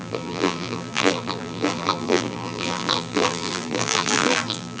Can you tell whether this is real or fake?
fake